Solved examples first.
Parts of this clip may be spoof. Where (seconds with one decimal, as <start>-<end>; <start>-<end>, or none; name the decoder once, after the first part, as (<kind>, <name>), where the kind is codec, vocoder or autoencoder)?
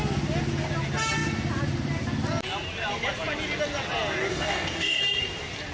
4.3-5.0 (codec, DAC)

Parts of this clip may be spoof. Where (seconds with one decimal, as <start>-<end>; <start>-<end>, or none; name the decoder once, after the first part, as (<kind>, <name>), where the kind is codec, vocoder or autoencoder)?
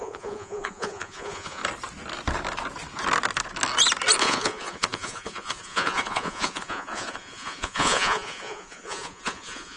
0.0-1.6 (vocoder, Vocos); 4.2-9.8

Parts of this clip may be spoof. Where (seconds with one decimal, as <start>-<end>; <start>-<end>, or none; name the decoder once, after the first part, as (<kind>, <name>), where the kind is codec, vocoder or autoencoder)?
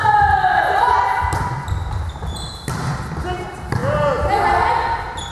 none